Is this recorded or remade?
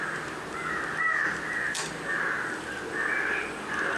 recorded